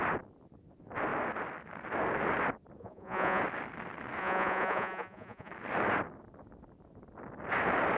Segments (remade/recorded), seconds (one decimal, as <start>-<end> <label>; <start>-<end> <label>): 0.0-2.8 recorded; 2.8-3.4 remade; 3.4-4.2 recorded; 4.2-5.5 remade; 5.5-8.0 recorded